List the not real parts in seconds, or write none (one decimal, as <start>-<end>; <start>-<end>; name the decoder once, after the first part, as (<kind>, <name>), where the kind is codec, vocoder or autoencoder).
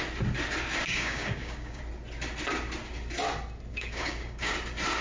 0.8-1.8 (codec, DAC); 3.7-4.5